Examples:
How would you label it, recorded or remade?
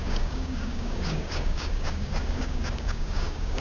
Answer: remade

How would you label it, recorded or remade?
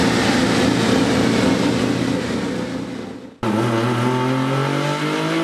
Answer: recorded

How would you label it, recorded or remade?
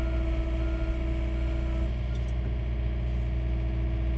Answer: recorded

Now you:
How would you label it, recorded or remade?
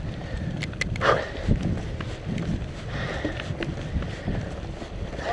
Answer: recorded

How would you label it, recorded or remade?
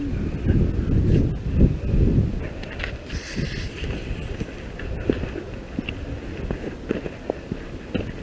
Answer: recorded